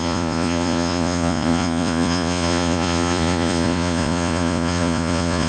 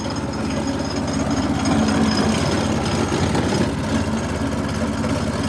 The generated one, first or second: first